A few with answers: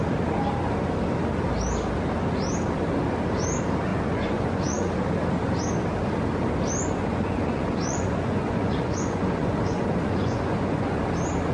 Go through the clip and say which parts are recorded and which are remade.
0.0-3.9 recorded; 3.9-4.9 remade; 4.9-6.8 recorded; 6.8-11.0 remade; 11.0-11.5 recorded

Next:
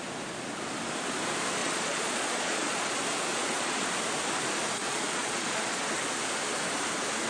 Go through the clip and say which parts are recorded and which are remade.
0.0-1.6 recorded; 1.6-2.9 remade; 2.9-3.3 recorded; 3.3-3.9 remade; 3.9-4.8 recorded; 4.8-5.9 remade; 5.9-7.3 recorded

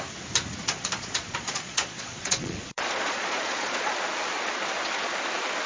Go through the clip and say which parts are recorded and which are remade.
0.0-0.5 recorded; 0.5-3.9 remade; 3.9-5.7 recorded

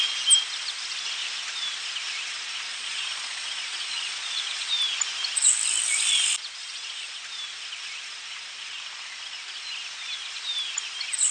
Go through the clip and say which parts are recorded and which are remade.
0.0-2.7 recorded; 2.7-4.7 remade; 4.7-6.6 recorded; 6.6-7.2 remade; 7.2-11.3 recorded

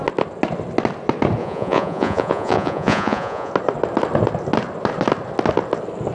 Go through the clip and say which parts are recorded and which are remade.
0.0-1.4 recorded; 1.4-3.5 remade; 3.5-6.1 recorded